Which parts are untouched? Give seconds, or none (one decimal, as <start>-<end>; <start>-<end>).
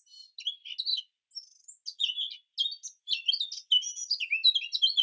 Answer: 0.0-5.0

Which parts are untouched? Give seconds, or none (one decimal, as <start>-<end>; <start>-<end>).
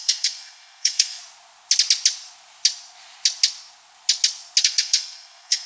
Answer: 1.2-4.6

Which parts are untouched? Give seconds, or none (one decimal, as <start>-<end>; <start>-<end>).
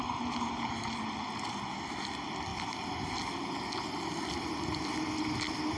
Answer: 0.0-5.8